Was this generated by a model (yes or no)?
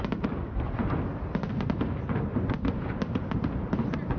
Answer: yes